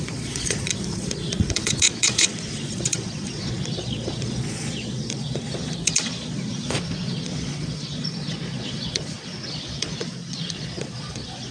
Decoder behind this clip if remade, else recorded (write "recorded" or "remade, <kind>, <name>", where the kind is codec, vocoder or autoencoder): remade, vocoder, Vocos